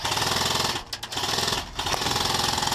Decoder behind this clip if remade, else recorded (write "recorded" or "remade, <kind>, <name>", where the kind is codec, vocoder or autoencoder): recorded